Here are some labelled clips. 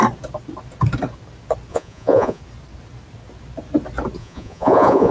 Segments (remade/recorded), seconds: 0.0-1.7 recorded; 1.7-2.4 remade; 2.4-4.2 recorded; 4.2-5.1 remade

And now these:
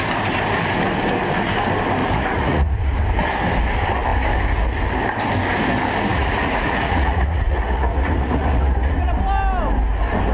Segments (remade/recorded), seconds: 0.0-2.0 recorded; 2.0-2.8 remade; 2.8-6.1 recorded; 6.1-9.1 remade; 9.1-10.3 recorded